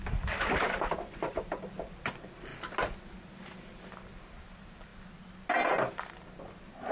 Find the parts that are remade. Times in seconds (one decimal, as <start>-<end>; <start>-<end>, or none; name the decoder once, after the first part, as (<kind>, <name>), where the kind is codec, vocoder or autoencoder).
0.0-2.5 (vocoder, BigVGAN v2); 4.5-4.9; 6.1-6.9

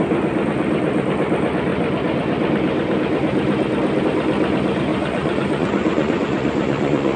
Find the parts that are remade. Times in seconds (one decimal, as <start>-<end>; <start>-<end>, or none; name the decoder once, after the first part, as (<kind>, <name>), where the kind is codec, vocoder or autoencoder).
4.9-7.2 (vocoder, Vocos)

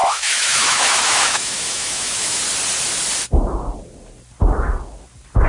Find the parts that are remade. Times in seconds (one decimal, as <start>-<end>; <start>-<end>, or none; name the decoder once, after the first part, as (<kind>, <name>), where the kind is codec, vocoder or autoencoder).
0.0-2.4 (autoencoder, DAC-VAE)